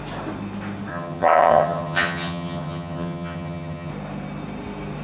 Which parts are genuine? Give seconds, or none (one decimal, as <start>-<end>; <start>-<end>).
0.0-0.9; 3.9-5.0